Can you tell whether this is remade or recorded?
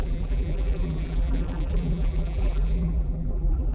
remade